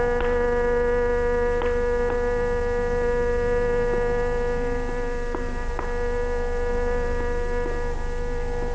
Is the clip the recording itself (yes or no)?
yes